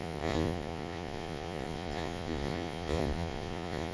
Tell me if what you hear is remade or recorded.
remade